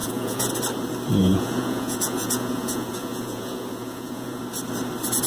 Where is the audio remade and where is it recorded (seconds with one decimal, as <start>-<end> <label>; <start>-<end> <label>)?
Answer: 0.0-0.5 remade; 0.5-1.2 recorded; 1.2-4.4 remade; 4.4-5.3 recorded